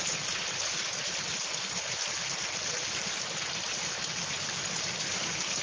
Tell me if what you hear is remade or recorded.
recorded